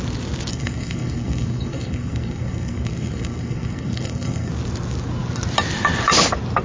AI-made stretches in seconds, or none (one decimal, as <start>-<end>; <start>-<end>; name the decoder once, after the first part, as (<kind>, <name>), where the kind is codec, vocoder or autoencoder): 0.5-4.5 (codec, SNAC)